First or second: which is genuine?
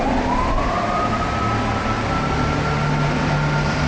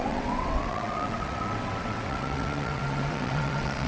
first